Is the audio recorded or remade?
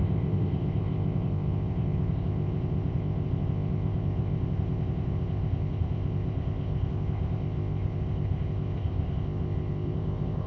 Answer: remade